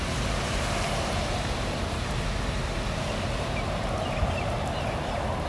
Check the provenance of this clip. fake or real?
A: fake